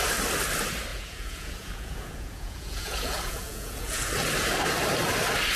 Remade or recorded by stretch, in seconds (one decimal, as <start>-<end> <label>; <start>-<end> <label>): 0.0-0.9 recorded; 0.9-4.1 remade; 4.1-5.6 recorded